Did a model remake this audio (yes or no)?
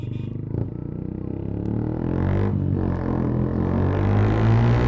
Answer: no